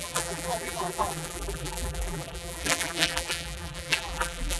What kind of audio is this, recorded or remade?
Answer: remade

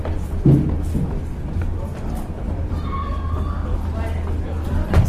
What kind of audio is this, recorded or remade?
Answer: recorded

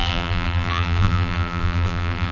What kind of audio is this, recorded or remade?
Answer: remade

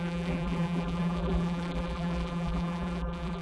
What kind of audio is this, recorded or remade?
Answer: remade